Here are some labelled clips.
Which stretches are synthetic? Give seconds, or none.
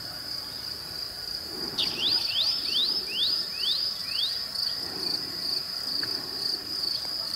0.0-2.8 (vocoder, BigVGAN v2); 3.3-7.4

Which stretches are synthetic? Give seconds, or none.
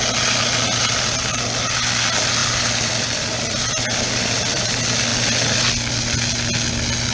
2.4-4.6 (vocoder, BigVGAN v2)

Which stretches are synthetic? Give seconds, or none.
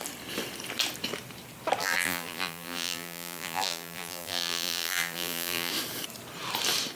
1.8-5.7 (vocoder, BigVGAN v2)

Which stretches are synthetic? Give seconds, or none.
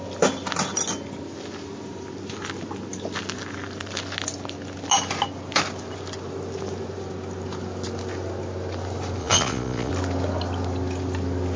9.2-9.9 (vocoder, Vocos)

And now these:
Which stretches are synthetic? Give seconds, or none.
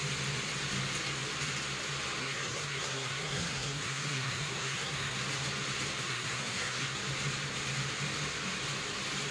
2.2-5.2 (codec, SNAC); 6.0-7.0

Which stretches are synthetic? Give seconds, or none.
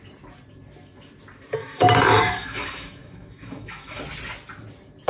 1.6-4.0 (autoencoder, DAC-VAE)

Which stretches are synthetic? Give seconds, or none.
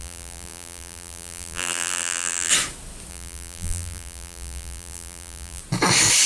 0.0-2.5 (vocoder, BigVGAN v2); 3.1-5.6